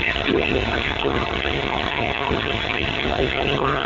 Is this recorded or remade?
remade